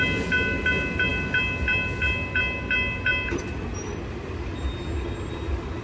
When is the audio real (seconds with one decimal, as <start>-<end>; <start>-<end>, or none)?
0.0-5.8